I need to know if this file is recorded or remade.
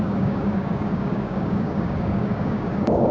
remade